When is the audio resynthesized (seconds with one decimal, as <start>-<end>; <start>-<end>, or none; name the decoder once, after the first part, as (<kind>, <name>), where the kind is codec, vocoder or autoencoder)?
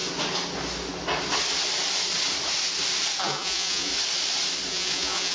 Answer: 3.2-3.9 (vocoder, Vocos); 4.7-5.3